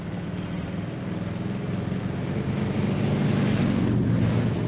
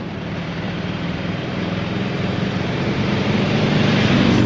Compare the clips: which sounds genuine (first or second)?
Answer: first